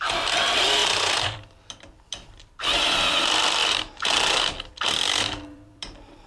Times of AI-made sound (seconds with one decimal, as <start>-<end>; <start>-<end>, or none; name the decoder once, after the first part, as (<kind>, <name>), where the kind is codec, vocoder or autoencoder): 0.0-3.6 (vocoder, BigVGAN v2); 4.7-6.3